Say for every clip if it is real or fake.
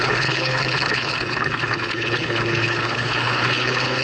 fake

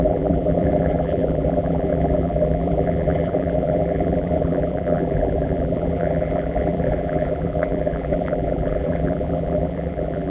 fake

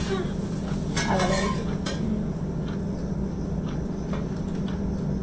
real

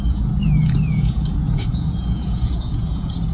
fake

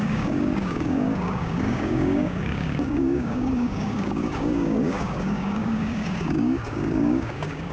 fake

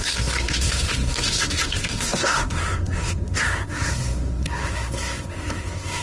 fake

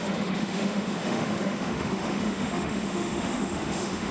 fake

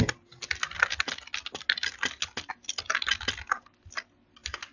real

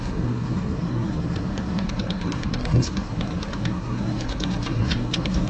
fake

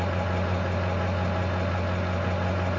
real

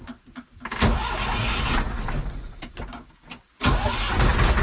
real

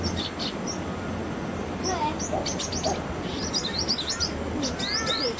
real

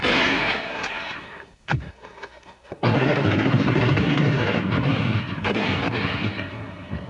fake